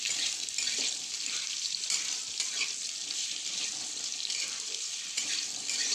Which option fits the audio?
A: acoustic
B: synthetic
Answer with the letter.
B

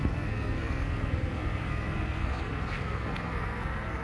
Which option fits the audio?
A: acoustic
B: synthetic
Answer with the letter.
B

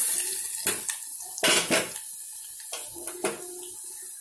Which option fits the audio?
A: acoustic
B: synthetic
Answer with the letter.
A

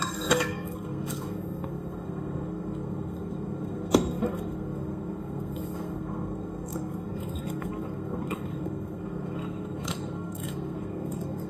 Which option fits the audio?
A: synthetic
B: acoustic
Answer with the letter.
A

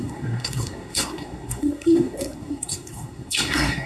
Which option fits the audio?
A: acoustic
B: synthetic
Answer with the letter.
B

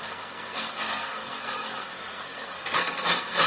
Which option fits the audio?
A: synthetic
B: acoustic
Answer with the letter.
A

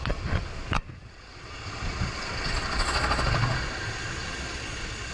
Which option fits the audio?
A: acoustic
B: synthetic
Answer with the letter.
B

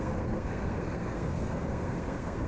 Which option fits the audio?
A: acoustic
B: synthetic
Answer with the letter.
B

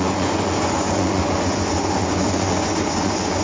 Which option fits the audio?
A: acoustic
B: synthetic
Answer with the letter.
B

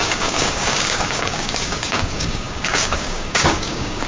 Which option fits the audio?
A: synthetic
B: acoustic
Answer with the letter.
A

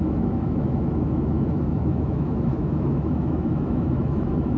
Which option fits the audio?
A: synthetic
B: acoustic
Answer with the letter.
A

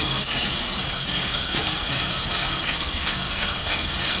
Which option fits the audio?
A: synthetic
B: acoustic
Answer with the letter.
A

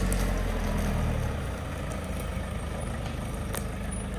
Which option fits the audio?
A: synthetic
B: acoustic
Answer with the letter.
B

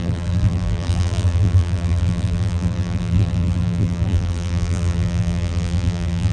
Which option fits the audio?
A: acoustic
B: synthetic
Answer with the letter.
B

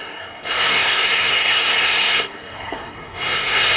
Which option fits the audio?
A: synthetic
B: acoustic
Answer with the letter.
A